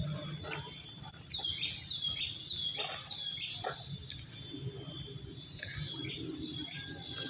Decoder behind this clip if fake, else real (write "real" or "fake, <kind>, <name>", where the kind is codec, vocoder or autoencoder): real